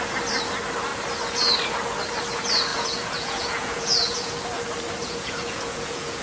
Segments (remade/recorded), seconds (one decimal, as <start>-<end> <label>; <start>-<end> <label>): 0.0-2.7 recorded; 2.7-4.3 remade; 4.3-5.0 recorded; 5.0-6.2 remade